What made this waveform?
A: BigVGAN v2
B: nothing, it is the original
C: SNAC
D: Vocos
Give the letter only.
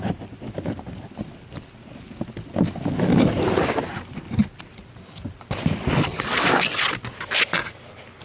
B